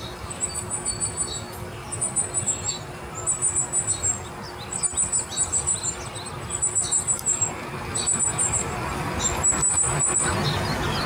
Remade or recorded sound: recorded